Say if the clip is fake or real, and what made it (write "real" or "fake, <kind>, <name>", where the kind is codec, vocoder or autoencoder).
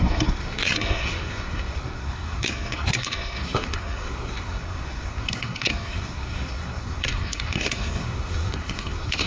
fake, codec, SNAC